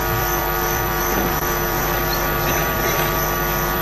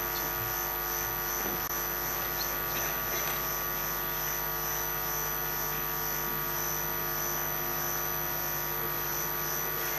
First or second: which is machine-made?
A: first